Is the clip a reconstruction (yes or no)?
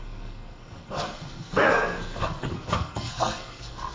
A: yes